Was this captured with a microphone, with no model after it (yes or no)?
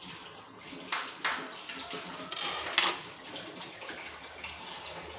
yes